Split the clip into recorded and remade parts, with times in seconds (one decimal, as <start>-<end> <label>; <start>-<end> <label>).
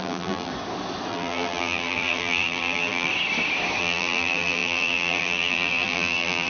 0.0-0.5 remade; 0.5-1.1 recorded; 1.1-3.1 remade; 3.1-3.8 recorded; 3.8-6.5 remade